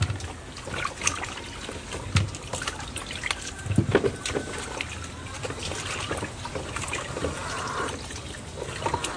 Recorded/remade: recorded